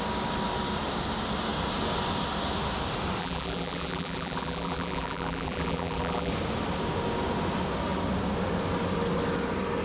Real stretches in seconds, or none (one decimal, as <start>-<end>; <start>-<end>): 0.0-3.2; 6.3-9.8